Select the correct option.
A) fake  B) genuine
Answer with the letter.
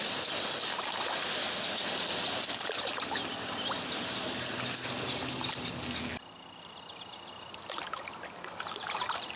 B